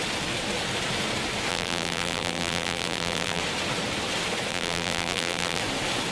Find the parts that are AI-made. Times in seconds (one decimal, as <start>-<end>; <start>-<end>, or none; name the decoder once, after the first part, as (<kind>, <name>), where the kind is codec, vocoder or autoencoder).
1.5-3.4 (vocoder, BigVGAN v2); 4.5-5.6